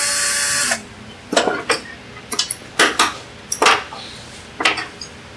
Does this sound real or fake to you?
real